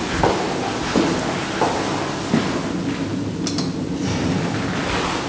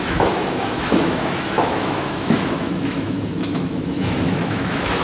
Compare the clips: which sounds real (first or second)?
first